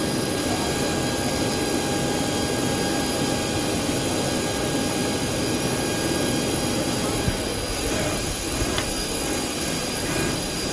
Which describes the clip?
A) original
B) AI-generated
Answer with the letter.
A